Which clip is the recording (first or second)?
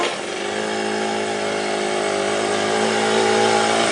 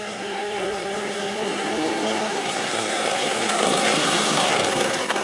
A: first